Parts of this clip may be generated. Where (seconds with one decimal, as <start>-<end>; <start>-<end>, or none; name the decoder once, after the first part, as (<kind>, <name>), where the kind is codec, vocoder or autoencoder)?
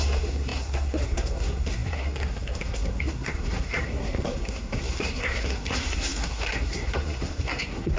0.0-8.0 (codec, SNAC)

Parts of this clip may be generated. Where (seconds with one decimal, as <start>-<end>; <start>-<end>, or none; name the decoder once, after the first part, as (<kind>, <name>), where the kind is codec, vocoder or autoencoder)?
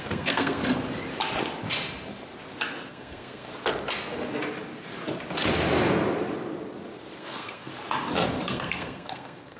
0.0-0.6 (codec, SNAC); 2.9-3.5; 7.2-7.7; 8.5-9.6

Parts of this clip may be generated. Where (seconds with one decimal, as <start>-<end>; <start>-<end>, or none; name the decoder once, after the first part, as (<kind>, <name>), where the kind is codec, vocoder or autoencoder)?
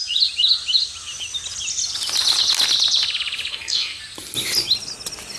3.5-4.0 (codec, SNAC)